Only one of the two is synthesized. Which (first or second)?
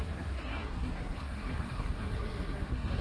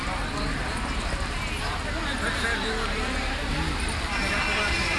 first